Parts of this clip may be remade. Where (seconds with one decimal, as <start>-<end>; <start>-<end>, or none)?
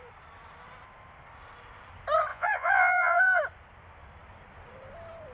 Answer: 2.3-3.4